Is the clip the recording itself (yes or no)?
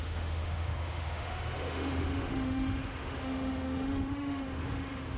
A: no